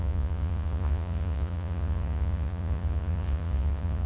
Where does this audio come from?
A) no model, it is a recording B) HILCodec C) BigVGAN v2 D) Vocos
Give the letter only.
D